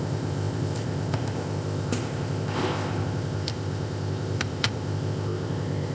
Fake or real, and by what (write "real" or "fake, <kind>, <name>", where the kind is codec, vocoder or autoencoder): fake, codec, ZipCodec